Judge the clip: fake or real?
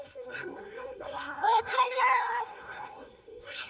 fake